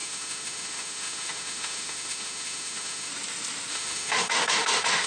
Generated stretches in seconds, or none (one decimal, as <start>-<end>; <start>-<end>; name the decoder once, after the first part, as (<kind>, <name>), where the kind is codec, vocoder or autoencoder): 0.0-3.1 (autoencoder, DAC-VAE); 3.7-5.1